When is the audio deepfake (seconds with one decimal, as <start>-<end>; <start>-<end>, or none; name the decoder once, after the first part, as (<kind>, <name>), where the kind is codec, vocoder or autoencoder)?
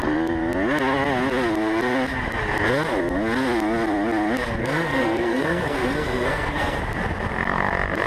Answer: 4.6-6.8 (codec, SNAC)